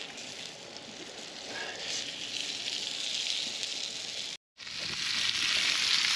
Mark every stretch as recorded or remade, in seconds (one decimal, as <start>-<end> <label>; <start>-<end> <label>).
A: 0.0-6.2 recorded